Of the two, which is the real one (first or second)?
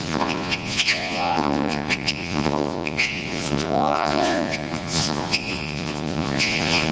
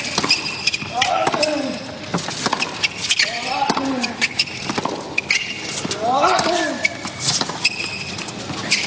second